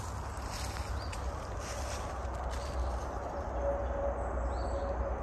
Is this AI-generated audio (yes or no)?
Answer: no